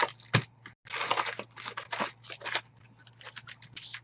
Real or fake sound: real